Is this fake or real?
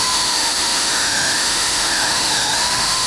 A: fake